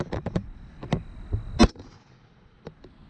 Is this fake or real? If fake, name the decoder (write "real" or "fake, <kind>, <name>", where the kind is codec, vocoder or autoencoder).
real